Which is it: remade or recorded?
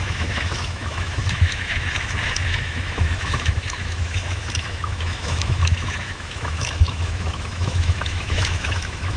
remade